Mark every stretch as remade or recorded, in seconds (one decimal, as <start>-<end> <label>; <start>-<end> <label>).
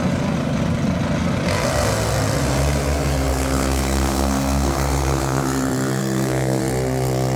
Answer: 0.0-3.3 recorded; 3.3-5.4 remade; 5.4-6.0 recorded; 6.0-6.6 remade; 6.6-7.4 recorded